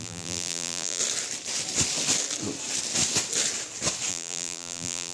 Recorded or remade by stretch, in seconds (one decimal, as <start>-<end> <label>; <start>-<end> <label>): 0.0-1.0 remade; 1.0-4.1 recorded; 4.1-5.1 remade